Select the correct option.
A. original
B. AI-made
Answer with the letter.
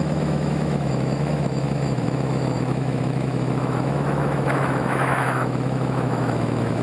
B